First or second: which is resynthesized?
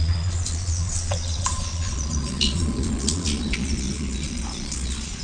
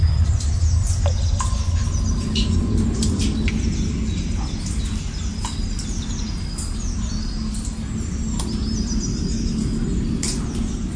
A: first